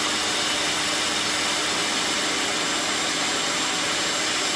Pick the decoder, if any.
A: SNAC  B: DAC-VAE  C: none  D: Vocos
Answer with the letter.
C